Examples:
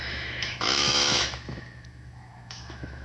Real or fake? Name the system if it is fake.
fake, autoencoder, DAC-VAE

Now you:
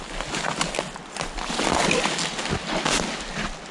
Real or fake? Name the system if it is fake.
real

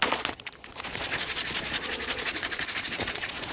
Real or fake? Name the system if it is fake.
fake, vocoder, Vocos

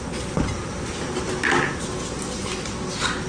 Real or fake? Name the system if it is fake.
real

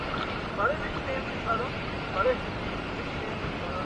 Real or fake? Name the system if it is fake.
fake, vocoder, BigVGAN v2